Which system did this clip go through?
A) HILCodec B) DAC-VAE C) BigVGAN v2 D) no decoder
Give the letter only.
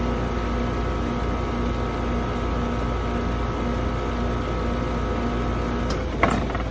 D